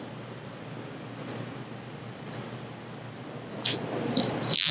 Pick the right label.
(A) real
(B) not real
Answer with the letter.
A